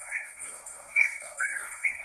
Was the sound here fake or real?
fake